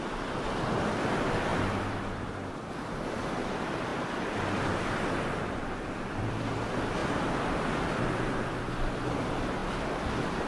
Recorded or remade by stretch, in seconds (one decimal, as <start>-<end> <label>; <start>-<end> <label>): 0.0-1.5 recorded; 1.5-2.2 remade; 2.2-3.9 recorded; 3.9-6.4 remade; 6.4-7.0 recorded; 7.0-8.7 remade; 8.7-9.6 recorded; 9.6-10.5 remade